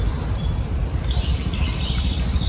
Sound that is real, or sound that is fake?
real